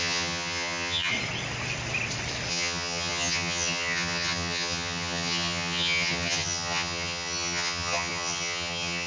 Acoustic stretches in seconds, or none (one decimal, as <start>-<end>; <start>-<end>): 1.1-2.5